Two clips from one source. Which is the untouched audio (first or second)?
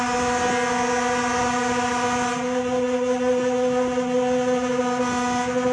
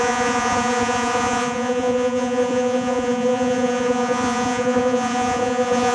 first